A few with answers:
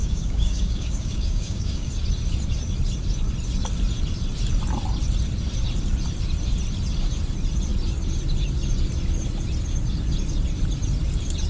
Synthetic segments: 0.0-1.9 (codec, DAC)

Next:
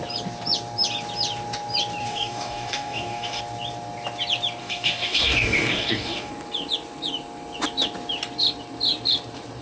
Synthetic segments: 2.0-3.4 (codec, DAC); 4.6-6.3